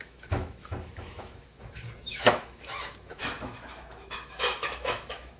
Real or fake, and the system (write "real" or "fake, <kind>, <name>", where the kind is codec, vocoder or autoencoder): fake, autoencoder, DAC-VAE